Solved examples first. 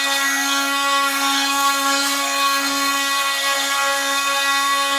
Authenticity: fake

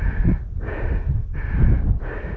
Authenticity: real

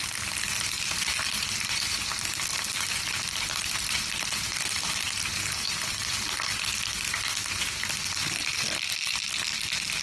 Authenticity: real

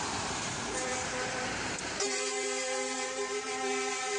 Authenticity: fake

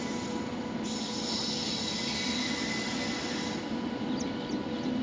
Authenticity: real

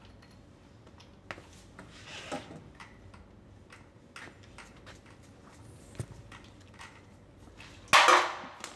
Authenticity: real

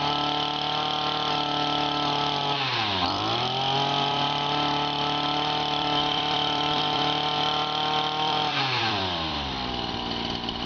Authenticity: fake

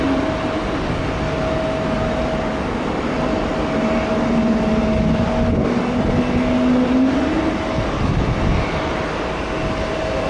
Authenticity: real